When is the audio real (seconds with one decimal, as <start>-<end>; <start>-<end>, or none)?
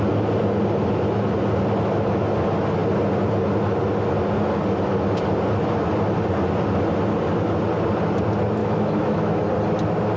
0.0-8.6; 9.4-10.2